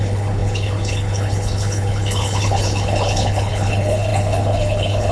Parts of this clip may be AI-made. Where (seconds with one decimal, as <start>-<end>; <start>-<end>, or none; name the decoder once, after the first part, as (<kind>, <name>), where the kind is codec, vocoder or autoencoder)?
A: 0.0-5.1 (codec, HILCodec)